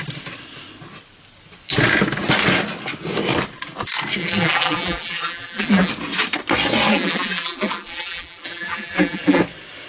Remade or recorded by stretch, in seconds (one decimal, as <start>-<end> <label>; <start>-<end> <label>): 0.0-4.2 recorded; 4.2-5.9 remade; 5.9-6.9 recorded; 6.9-9.4 remade; 9.4-9.9 recorded